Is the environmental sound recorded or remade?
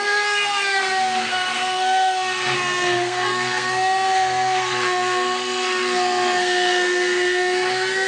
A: remade